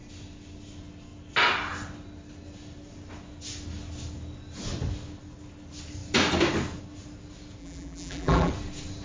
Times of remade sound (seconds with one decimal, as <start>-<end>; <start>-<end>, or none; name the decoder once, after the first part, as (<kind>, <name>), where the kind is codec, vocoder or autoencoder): 7.6-8.5 (vocoder, BigVGAN v2)